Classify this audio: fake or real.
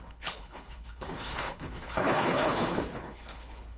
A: fake